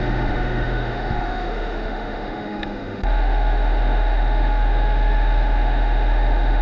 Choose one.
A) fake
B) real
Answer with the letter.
A